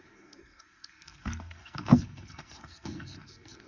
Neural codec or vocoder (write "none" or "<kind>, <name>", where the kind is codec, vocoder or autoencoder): codec, SNAC